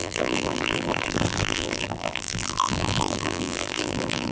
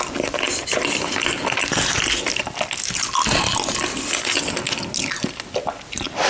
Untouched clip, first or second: second